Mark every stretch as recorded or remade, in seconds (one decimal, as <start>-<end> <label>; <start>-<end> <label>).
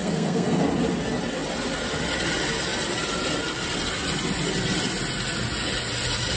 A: 0.0-0.6 remade; 0.6-6.4 recorded